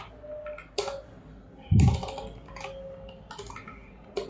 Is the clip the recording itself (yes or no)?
yes